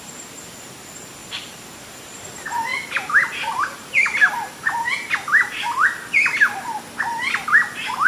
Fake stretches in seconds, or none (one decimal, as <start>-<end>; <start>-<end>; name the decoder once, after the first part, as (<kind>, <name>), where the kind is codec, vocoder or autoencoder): 1.2-2.2 (vocoder, BigVGAN v2); 2.7-4.5